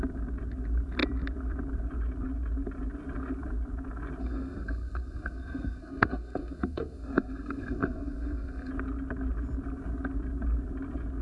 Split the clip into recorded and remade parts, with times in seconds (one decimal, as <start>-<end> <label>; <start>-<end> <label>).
0.0-4.2 recorded; 4.2-8.7 remade; 8.7-11.2 recorded